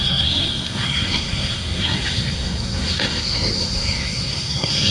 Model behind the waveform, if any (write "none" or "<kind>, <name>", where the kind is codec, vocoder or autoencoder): codec, SNAC